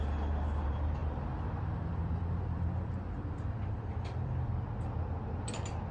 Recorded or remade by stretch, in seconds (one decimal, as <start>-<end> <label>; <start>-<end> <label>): 0.0-1.0 recorded; 1.0-4.5 remade; 4.5-5.9 recorded